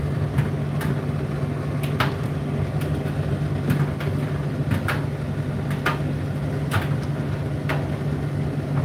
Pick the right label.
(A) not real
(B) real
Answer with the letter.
B